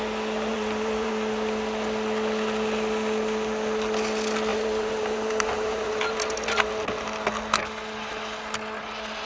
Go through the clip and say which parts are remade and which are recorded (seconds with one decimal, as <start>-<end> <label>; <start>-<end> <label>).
0.0-0.5 recorded; 0.5-1.1 remade; 1.1-4.5 recorded; 4.5-6.7 remade; 6.7-9.3 recorded